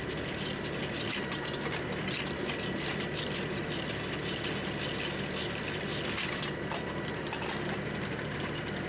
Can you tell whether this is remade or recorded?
recorded